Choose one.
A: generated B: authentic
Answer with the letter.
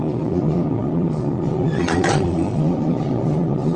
A